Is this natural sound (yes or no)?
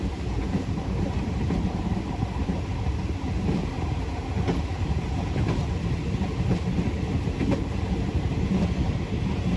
yes